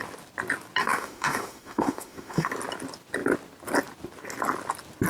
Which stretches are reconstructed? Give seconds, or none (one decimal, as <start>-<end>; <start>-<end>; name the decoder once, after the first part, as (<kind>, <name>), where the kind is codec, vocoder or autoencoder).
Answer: 0.8-2.5 (autoencoder, DAC-VAE)